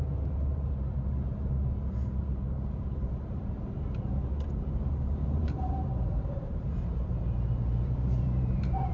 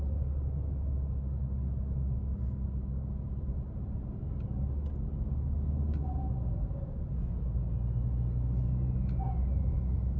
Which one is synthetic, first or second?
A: first